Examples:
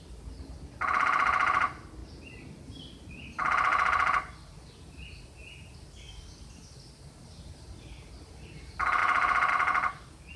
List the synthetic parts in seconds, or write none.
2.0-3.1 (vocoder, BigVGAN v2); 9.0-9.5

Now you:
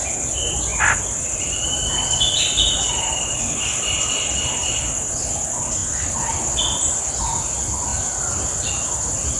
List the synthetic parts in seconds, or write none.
none